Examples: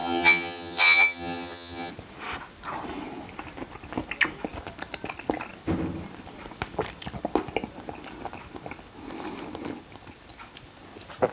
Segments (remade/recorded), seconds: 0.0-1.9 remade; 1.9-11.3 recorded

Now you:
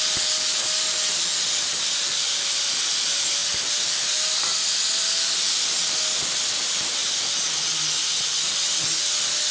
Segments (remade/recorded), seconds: 0.0-9.5 recorded

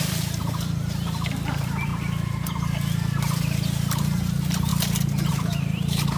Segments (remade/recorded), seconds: 0.0-1.9 remade; 1.9-4.0 recorded; 4.0-4.7 remade; 4.7-5.3 recorded; 5.3-6.2 remade